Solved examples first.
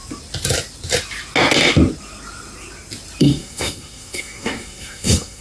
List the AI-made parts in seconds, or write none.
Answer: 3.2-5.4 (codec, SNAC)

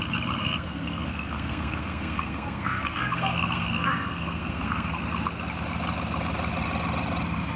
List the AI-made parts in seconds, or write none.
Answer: 0.4-5.0 (codec, SNAC)

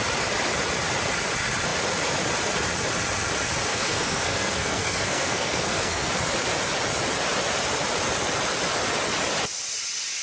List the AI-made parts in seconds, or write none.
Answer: 3.7-6.1 (codec, SNAC)

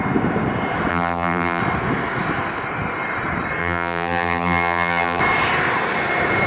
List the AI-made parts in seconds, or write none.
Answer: 0.9-1.6 (vocoder, BigVGAN v2); 3.6-5.2